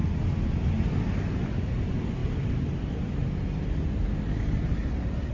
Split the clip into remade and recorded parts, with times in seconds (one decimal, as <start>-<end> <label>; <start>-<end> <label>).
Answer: 0.0-2.2 recorded; 2.2-4.4 remade; 4.4-5.3 recorded